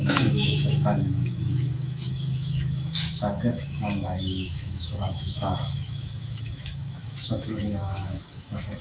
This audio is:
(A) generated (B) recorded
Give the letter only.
A